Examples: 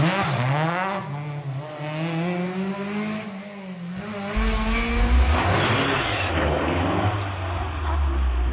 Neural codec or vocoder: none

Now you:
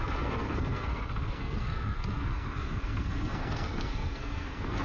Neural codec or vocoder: codec, SNAC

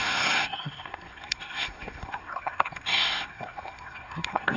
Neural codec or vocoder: codec, SNAC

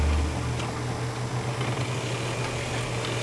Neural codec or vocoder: none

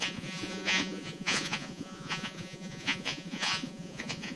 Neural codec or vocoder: vocoder, Vocos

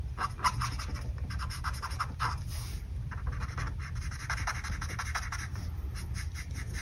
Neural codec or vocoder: none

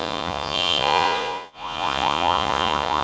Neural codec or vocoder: vocoder, Vocos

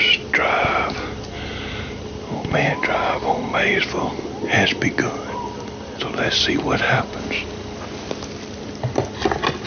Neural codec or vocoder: none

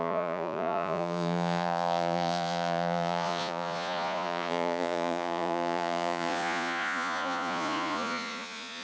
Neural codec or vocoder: vocoder, Vocos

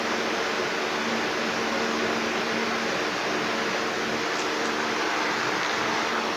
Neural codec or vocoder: none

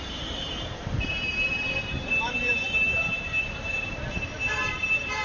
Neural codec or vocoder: vocoder, BigVGAN v2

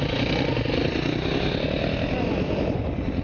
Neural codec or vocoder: none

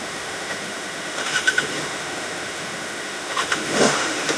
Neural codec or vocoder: autoencoder, DAC-VAE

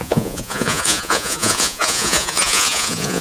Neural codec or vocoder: vocoder, Vocos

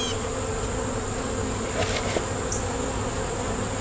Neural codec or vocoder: none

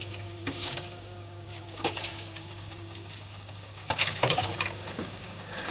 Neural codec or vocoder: codec, DAC